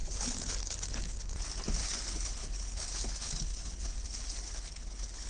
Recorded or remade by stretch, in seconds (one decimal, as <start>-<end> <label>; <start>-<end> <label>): 0.0-1.3 remade; 1.3-1.8 recorded; 1.8-5.3 remade